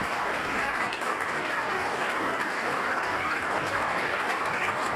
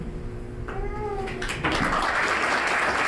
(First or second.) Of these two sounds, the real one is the second